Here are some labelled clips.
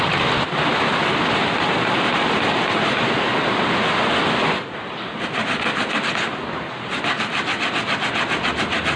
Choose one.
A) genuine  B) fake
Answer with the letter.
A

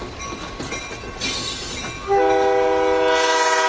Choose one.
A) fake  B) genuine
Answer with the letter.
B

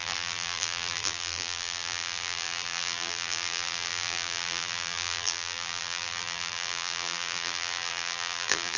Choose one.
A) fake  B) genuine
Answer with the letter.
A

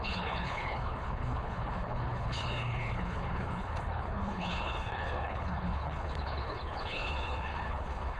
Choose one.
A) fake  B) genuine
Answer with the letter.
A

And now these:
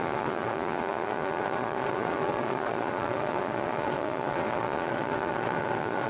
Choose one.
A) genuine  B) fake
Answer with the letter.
B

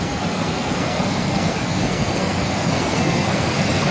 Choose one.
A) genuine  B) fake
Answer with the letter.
B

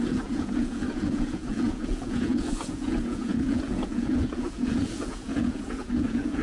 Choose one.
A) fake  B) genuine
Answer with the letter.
A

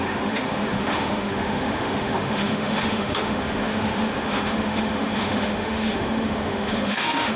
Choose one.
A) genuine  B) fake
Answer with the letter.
B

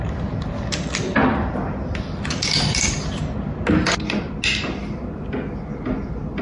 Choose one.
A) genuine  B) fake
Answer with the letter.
A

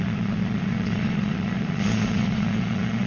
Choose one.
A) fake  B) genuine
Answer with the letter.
A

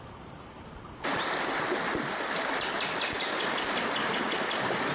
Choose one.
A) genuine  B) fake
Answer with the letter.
A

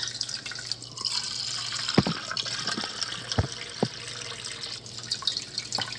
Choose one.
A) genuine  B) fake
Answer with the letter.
A